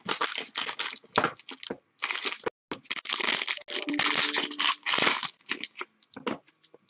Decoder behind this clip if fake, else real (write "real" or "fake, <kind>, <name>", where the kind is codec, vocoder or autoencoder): real